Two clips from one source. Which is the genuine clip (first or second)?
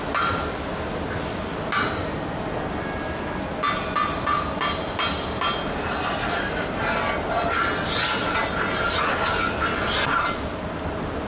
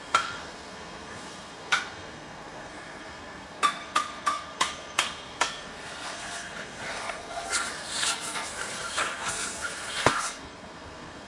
first